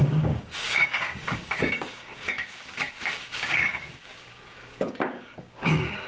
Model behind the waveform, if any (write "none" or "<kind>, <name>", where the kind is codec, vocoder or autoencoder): codec, DAC